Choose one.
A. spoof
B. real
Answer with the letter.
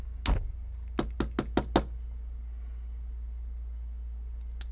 B